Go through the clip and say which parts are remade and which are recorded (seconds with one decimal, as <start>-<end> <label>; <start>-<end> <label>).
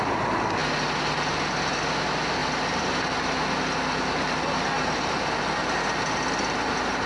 0.0-7.1 recorded